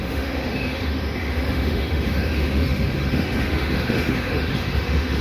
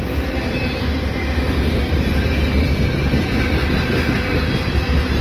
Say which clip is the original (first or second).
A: second